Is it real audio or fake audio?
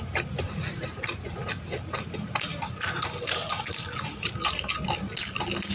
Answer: real